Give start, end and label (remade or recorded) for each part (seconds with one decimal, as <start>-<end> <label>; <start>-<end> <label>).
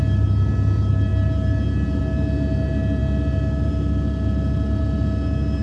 0.0-5.6 recorded